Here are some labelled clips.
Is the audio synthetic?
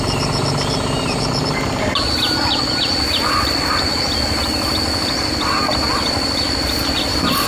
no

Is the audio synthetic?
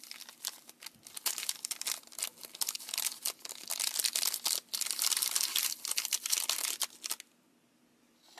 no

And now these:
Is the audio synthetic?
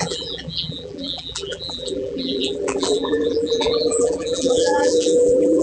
yes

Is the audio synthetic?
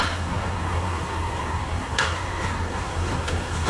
yes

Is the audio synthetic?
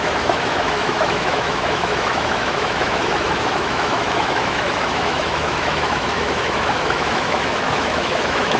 yes